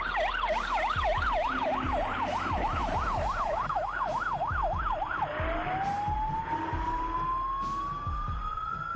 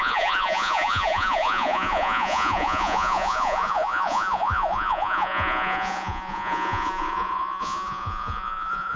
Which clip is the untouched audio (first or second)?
first